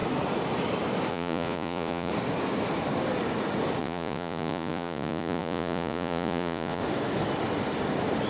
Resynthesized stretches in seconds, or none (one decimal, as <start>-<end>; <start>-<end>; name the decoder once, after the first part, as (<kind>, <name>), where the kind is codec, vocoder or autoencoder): 1.1-2.1 (vocoder, Vocos); 3.8-6.8